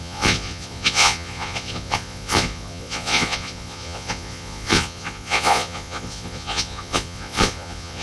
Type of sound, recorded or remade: remade